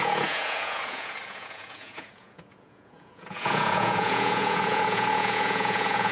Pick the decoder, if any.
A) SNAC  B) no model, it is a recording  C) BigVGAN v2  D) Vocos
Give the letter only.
D